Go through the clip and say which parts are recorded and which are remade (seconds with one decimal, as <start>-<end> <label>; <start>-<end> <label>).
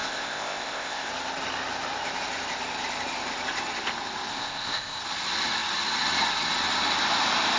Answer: 0.0-1.1 remade; 1.1-4.3 recorded; 4.3-5.0 remade; 5.0-7.6 recorded